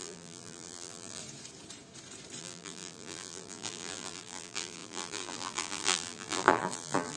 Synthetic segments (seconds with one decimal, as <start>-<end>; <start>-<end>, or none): 0.0-1.2; 2.4-7.2